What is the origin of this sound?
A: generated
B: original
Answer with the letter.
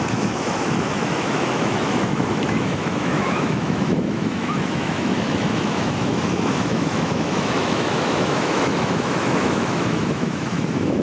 A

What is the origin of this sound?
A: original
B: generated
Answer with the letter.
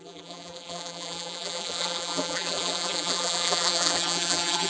B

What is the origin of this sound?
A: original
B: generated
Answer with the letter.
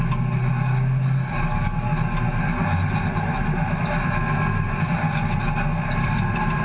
A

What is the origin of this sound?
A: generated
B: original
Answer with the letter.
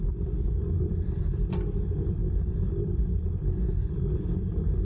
A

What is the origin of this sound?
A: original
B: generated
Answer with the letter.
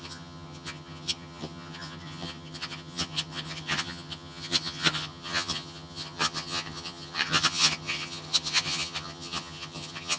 B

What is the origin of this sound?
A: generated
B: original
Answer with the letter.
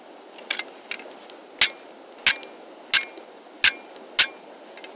B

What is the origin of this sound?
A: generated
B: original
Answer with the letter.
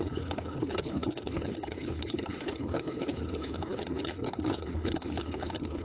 A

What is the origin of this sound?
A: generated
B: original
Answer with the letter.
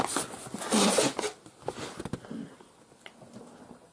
B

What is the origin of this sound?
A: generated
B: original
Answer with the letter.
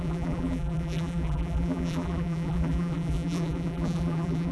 A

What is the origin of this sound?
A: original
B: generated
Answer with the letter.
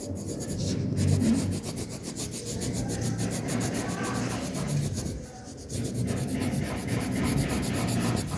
A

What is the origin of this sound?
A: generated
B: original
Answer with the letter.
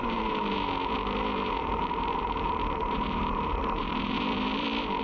A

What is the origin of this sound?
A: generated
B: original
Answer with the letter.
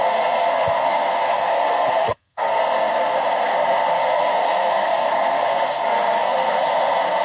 A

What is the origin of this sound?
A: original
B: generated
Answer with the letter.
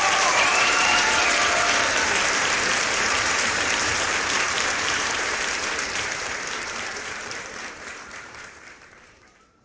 B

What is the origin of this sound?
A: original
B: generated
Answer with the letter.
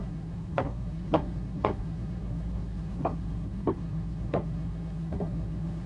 B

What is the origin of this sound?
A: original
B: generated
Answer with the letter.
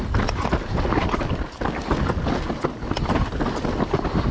A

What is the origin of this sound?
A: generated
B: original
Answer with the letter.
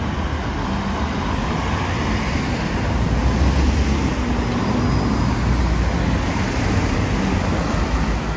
B